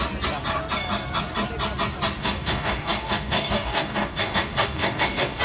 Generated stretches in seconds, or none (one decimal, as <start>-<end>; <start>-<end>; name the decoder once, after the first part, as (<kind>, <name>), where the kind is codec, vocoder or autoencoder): 2.2-5.4 (codec, DAC)